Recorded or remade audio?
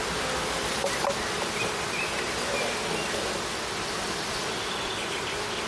recorded